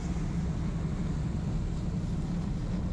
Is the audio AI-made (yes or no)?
no